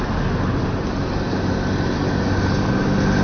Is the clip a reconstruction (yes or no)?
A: no